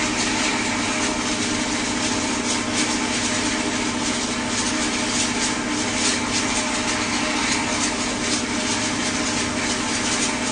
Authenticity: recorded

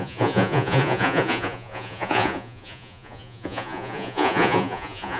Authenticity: remade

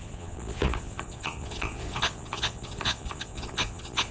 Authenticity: remade